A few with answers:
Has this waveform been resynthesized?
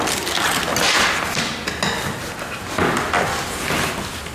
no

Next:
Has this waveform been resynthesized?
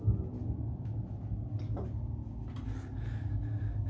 no